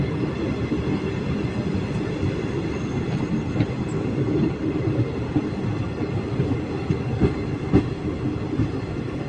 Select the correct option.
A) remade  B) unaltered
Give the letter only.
B